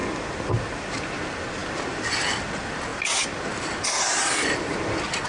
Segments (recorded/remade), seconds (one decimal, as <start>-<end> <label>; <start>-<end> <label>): 0.0-5.3 recorded